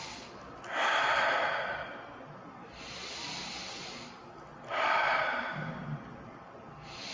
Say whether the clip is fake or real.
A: real